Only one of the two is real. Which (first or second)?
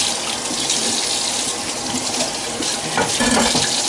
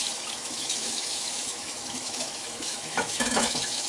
first